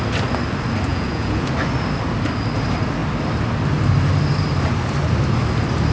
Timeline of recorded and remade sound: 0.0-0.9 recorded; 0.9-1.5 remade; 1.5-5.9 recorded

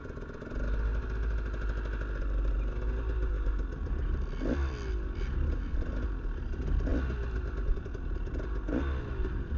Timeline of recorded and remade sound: 0.0-9.6 recorded

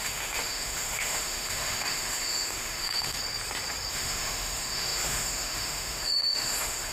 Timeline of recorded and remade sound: 0.0-3.2 remade; 3.2-3.9 recorded; 3.9-6.9 remade

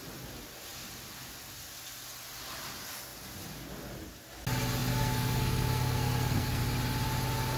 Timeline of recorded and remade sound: 0.0-4.9 recorded; 4.9-6.6 remade; 6.6-7.6 recorded